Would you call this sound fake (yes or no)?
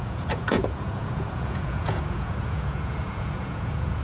yes